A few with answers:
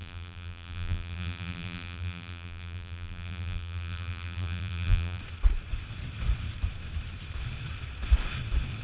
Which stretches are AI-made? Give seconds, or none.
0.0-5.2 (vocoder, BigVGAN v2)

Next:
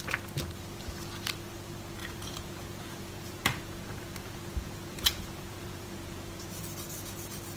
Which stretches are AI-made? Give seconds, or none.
2.0-6.6 (vocoder, Vocos)